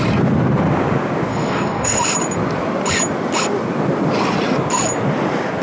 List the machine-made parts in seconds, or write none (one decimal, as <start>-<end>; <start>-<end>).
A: 1.3-2.0